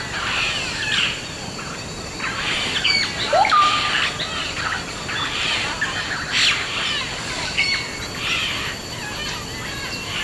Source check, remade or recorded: recorded